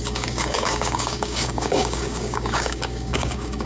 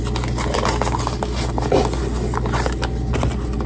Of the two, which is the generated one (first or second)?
first